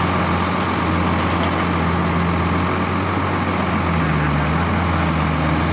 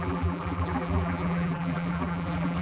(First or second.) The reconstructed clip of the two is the second